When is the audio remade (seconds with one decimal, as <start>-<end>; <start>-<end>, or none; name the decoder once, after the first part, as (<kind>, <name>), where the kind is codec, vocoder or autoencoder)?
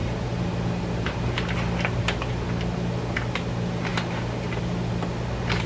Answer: 0.0-2.3 (vocoder, BigVGAN v2); 3.9-4.9